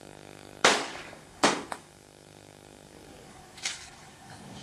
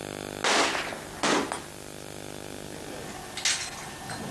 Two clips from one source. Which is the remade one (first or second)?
first